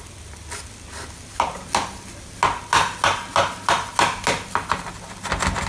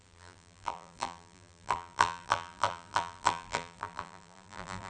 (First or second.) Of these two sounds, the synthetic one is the second